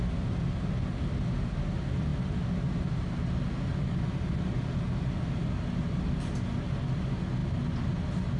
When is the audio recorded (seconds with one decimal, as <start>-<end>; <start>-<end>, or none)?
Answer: 0.0-8.4